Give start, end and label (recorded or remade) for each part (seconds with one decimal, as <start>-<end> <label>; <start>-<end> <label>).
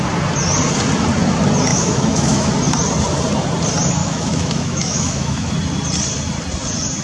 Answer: 0.0-1.7 recorded; 1.7-2.5 remade; 2.5-4.0 recorded; 4.0-5.5 remade; 5.5-7.0 recorded